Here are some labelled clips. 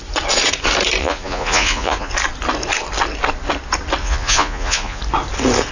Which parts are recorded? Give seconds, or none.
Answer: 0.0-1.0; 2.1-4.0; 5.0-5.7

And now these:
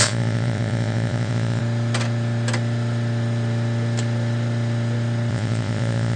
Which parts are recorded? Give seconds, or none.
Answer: 1.6-5.3

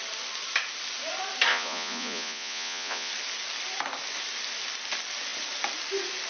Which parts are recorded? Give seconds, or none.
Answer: 0.0-1.5; 3.1-6.3

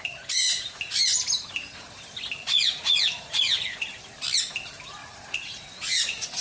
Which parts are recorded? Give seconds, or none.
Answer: 0.0-2.5; 3.9-5.0

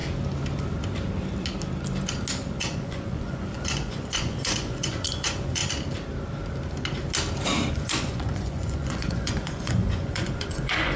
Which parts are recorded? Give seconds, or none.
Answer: 0.0-2.6; 5.6-7.7

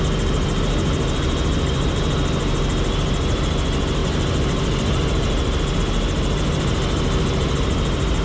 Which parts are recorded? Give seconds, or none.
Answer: 0.0-8.2

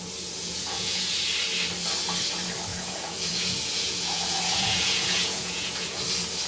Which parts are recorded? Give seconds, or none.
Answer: 0.0-0.4; 1.1-2.7; 6.0-6.5

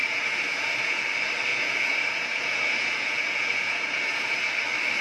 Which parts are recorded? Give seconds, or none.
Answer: 1.0-1.5; 4.5-5.0